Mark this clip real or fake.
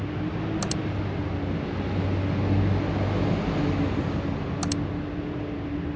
real